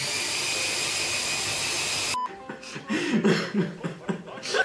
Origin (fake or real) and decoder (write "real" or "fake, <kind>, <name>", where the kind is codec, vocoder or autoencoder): real